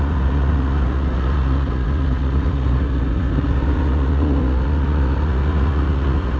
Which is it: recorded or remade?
remade